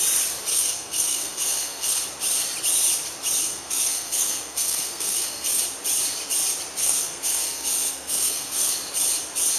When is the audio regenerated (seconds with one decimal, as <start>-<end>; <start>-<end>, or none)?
0.5-2.0; 3.4-5.6; 6.8-8.7